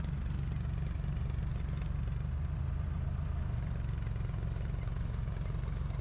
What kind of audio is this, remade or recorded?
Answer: recorded